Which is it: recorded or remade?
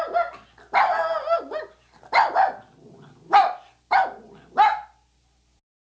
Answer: recorded